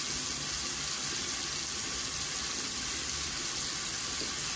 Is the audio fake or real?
real